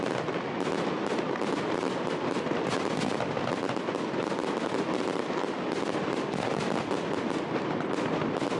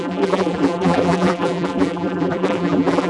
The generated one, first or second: second